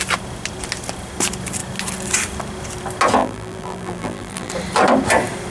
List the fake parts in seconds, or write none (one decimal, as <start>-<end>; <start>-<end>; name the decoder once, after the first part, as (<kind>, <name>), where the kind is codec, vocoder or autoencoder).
3.2-4.5 (vocoder, BigVGAN v2)